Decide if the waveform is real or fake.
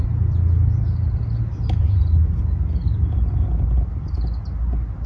real